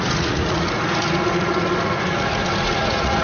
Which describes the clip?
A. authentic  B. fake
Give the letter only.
B